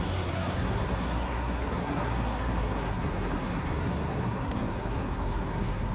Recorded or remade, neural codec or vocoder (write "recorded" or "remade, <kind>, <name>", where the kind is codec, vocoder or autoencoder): remade, codec, SNAC